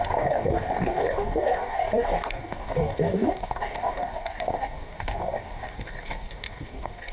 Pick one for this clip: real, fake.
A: fake